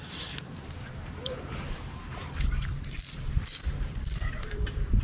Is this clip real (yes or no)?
no